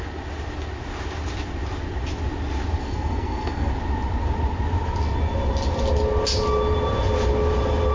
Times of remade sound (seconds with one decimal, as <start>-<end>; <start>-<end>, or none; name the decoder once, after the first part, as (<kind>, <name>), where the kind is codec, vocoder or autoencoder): 2.8-3.7 (codec, SNAC)